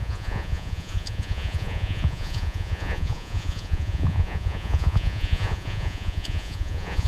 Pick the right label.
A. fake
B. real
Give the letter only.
A